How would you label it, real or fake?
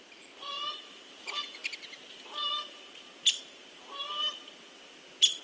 real